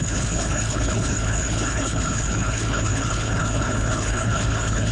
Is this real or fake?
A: fake